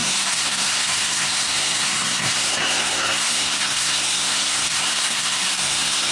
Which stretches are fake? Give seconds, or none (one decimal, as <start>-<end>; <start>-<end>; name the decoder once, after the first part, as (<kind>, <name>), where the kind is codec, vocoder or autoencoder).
0.0-6.1 (codec, SNAC)